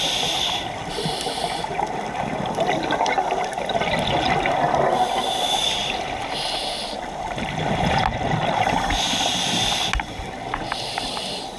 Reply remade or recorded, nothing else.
recorded